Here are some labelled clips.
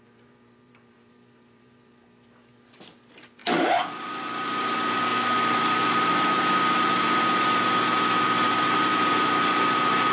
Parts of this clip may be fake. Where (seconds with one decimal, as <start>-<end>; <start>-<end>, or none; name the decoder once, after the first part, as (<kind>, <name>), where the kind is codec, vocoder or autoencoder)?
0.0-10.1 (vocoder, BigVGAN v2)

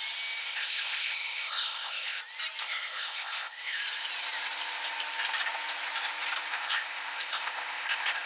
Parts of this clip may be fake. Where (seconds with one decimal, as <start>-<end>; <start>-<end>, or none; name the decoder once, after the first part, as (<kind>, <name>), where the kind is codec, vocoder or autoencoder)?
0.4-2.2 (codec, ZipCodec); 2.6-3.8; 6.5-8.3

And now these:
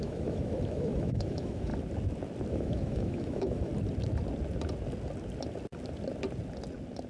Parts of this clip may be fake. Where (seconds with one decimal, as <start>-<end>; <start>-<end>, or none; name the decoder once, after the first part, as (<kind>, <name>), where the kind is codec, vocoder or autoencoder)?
0.0-1.7 (autoencoder, DAC-VAE); 2.5-3.7

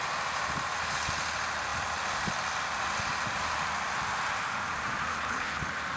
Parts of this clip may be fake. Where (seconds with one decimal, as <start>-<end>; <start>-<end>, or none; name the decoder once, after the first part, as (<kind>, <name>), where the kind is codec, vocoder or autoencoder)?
5.1-5.6 (codec, HILCodec)

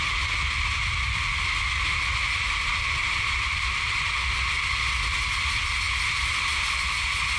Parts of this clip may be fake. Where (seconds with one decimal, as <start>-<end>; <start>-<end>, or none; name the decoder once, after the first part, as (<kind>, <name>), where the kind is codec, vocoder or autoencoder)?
none

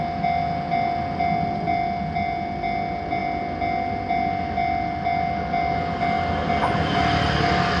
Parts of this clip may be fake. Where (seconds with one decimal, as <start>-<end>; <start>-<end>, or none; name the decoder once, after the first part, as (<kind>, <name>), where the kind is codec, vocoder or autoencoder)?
none

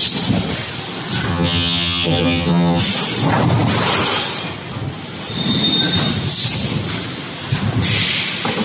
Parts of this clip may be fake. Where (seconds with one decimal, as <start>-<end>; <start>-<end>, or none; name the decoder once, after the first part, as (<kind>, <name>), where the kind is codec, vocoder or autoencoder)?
1.3-2.8 (vocoder, HiFi-GAN)